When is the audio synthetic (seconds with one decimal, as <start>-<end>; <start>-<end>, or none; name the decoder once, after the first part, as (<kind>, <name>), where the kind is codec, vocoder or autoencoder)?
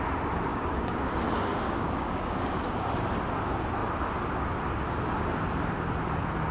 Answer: 0.5-1.1 (codec, DAC); 1.5-2.8